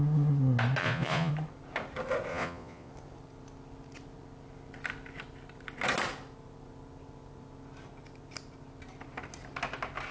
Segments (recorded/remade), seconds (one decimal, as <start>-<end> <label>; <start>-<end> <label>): 0.0-0.8 recorded; 0.8-1.3 remade; 1.3-2.3 recorded; 2.3-2.9 remade; 2.9-10.1 recorded